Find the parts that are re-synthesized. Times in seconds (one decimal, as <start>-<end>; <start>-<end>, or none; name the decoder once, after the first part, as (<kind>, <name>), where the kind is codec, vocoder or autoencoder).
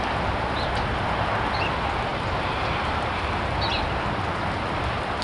none